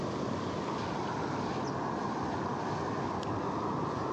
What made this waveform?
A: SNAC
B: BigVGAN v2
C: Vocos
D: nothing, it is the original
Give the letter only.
D